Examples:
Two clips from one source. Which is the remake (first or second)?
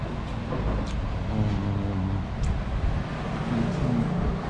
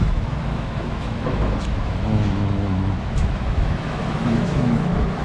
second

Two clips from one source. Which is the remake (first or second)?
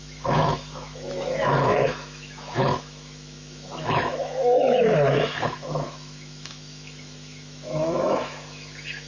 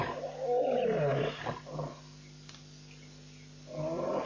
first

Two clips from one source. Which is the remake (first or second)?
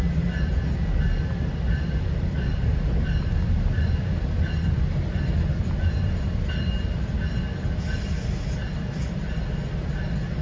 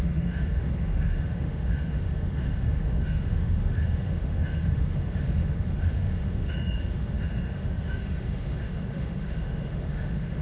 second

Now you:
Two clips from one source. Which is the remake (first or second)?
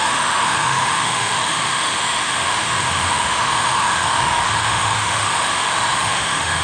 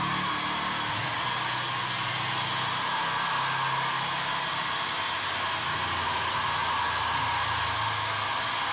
first